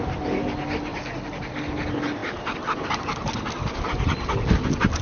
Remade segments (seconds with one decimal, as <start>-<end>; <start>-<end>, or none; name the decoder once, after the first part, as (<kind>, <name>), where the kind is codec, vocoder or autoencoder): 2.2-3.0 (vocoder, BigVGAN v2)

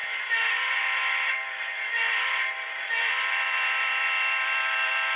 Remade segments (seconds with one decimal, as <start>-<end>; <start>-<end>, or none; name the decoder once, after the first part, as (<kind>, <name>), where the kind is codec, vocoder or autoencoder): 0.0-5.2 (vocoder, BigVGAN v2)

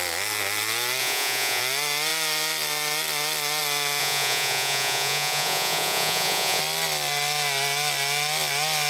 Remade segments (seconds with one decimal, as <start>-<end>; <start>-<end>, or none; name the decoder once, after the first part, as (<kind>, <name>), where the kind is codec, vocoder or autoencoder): 1.0-1.6 (vocoder, Vocos); 4.0-6.6